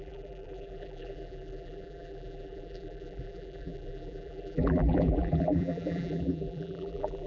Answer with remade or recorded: remade